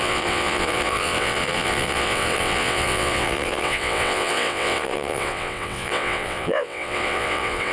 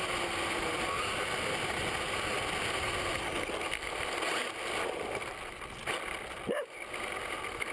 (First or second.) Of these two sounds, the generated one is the first